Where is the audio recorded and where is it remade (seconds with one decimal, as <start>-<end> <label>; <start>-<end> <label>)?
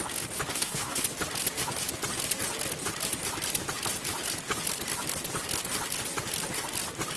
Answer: 0.0-0.5 recorded; 0.5-1.0 remade; 1.0-7.2 recorded